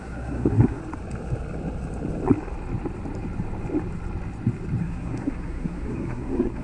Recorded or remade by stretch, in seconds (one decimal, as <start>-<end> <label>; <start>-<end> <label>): 0.0-0.8 remade; 0.8-4.8 recorded; 4.8-6.6 remade